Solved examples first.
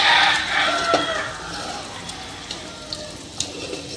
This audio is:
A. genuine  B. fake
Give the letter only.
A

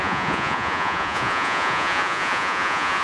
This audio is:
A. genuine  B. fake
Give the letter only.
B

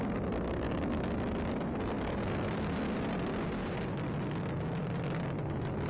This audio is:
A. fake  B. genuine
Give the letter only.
B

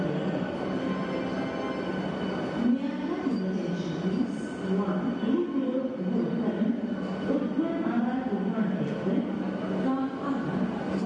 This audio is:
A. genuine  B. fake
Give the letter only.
A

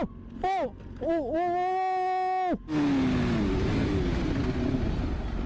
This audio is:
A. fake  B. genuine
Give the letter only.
B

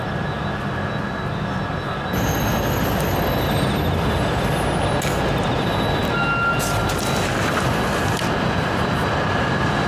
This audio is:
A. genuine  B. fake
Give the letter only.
A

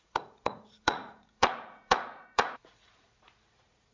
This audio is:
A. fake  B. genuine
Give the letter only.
A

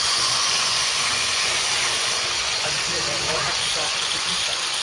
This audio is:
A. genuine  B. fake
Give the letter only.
B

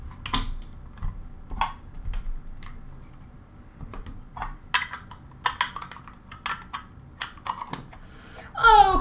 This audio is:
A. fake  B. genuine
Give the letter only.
B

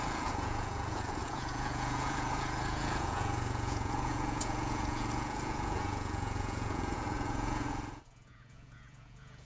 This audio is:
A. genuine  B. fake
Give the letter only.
B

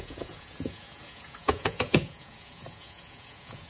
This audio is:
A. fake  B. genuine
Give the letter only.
A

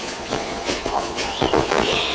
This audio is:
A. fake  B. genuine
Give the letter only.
A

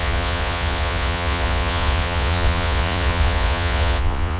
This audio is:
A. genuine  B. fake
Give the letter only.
B